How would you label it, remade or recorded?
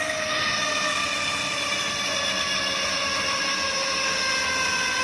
recorded